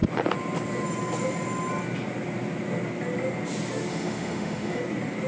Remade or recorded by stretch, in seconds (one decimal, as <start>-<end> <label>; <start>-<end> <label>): 0.0-3.9 recorded; 3.9-4.8 remade; 4.8-5.3 recorded